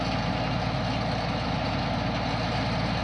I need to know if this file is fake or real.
real